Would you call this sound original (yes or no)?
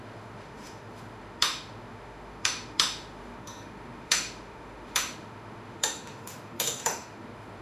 no